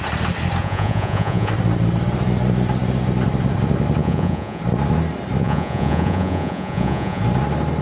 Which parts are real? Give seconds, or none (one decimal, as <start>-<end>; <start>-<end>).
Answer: 0.0-0.6; 1.5-4.0; 4.6-5.4; 7.2-7.8